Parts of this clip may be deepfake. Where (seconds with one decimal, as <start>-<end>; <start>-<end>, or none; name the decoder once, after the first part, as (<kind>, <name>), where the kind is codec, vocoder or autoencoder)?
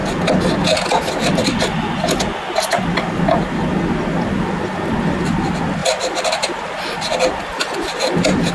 5.8-8.5 (vocoder, BigVGAN v2)